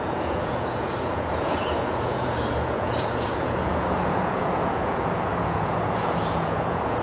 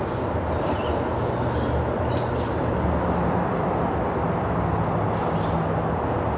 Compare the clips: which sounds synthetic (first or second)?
first